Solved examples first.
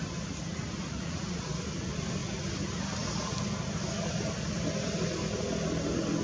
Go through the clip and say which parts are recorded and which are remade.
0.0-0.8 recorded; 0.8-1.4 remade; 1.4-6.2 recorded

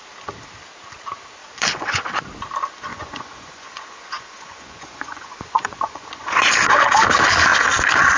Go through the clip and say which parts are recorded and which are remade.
0.0-1.4 recorded; 1.4-2.1 remade; 2.1-2.9 recorded; 2.9-6.5 remade; 6.5-8.2 recorded

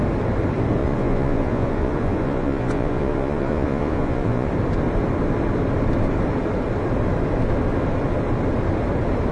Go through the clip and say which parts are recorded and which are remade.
0.0-0.8 recorded; 0.8-4.5 remade; 4.5-9.3 recorded

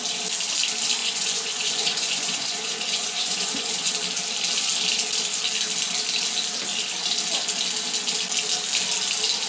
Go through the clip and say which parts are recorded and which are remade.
0.0-1.0 recorded; 1.0-3.9 remade; 3.9-9.5 recorded

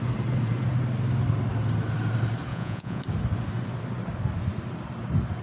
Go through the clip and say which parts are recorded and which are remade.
0.0-2.5 recorded; 2.5-3.0 remade; 3.0-5.4 recorded

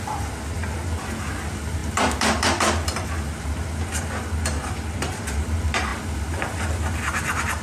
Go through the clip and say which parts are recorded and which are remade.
0.0-7.6 recorded